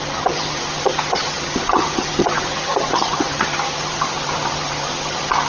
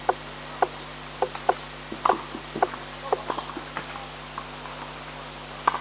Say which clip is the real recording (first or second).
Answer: second